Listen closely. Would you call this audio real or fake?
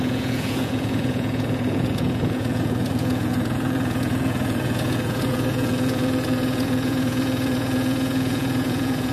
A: fake